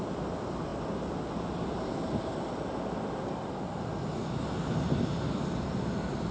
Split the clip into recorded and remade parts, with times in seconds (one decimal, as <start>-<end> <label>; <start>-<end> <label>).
0.0-6.3 recorded